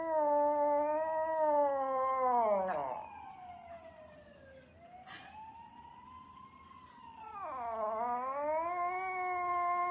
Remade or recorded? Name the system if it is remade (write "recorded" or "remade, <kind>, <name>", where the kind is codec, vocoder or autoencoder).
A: recorded